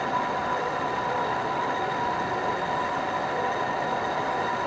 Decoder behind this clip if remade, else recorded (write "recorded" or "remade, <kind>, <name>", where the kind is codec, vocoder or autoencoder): recorded